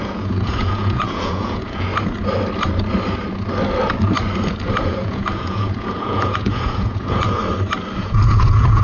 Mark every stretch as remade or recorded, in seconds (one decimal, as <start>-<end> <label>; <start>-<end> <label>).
0.0-1.9 remade; 1.9-4.9 recorded; 4.9-7.4 remade; 7.4-8.0 recorded; 8.0-8.8 remade